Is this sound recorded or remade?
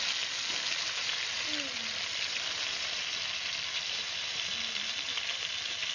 recorded